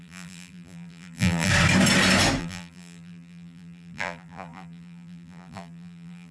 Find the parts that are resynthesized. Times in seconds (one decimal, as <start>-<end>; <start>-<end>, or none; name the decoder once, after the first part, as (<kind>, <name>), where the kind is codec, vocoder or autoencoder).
0.0-1.5 (vocoder, BigVGAN v2); 2.4-6.3